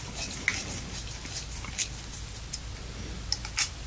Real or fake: real